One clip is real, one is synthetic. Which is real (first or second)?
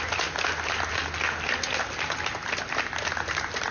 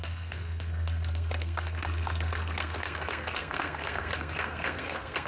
first